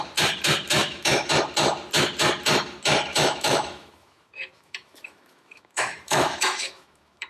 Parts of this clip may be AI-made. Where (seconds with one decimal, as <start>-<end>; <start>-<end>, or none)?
0.8-1.3; 3.1-7.3